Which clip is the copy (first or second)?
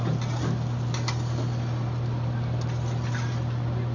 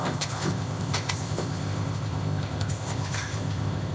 second